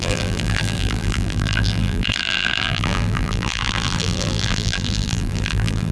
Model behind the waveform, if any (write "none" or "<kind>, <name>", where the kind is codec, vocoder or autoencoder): vocoder, BigVGAN v2